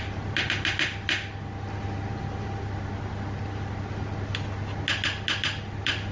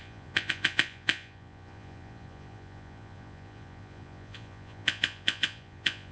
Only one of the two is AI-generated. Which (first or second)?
second